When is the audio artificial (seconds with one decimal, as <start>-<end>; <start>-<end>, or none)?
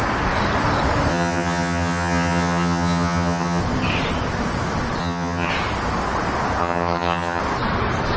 1.1-3.6; 5.0-5.5; 6.6-7.4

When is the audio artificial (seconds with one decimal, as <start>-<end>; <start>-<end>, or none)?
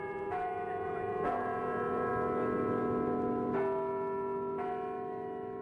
0.0-2.1